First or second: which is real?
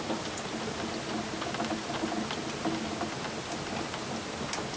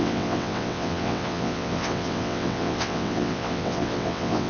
first